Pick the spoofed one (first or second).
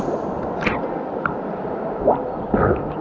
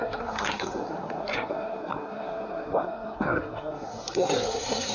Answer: second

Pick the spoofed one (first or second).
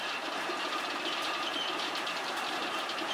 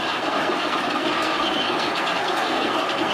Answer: second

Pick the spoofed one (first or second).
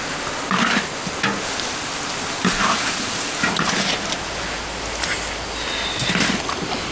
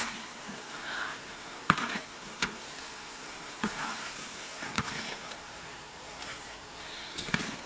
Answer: second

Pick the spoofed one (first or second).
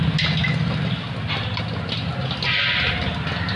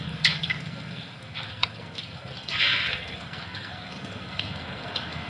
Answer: second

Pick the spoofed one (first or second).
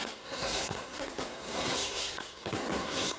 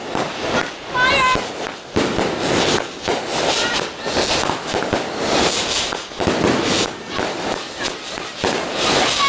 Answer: first